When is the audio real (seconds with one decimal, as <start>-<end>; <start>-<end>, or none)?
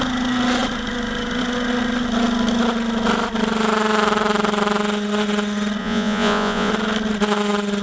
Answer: 0.0-5.8; 6.7-7.8